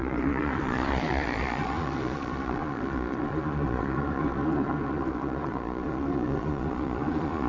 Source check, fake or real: fake